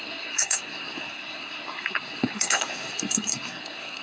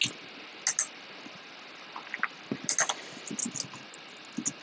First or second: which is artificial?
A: first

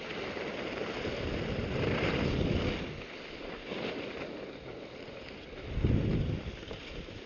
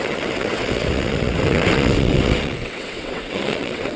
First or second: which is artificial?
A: second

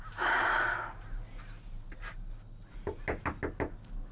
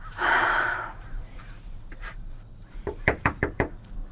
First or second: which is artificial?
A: second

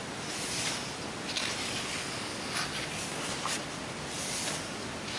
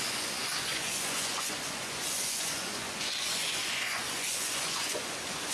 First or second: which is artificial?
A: second